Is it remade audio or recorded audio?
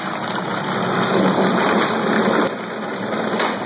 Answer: recorded